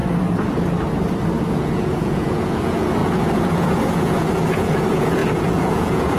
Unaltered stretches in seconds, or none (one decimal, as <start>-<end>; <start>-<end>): 0.0-1.5